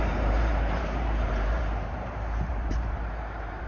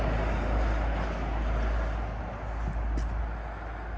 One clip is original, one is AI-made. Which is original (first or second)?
second